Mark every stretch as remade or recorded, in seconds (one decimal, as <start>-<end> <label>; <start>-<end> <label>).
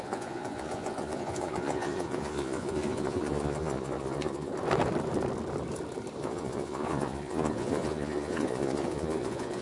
0.0-4.5 remade; 4.5-6.2 recorded; 6.2-9.6 remade